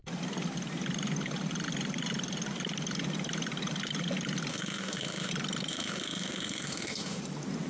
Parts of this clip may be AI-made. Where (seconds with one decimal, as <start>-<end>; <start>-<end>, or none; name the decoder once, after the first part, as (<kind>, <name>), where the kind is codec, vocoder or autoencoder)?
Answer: 4.5-5.3 (autoencoder, DAC-VAE); 5.7-7.2